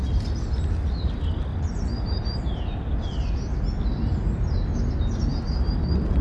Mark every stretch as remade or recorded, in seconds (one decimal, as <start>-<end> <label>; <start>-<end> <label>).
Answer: 0.0-6.2 recorded

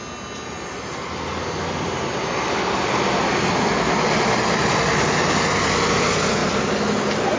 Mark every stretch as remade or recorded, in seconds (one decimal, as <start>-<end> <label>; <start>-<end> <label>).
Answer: 0.0-7.4 recorded

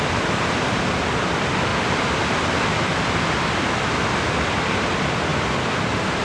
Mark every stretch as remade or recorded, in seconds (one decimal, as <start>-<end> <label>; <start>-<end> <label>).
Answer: 0.0-6.2 recorded

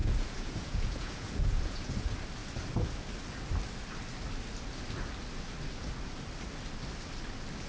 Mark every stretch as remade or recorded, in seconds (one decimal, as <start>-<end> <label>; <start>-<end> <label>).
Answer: 0.0-2.0 remade; 2.0-7.7 recorded

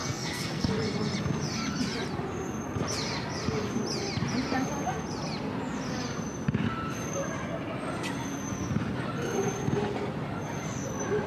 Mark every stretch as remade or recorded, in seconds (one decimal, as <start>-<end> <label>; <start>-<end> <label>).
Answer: 0.0-0.7 remade; 0.7-11.3 recorded

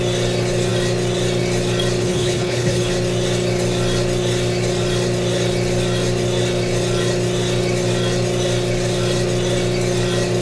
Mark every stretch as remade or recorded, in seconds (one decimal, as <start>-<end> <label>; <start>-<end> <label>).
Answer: 0.0-2.0 recorded; 2.0-2.9 remade; 2.9-10.4 recorded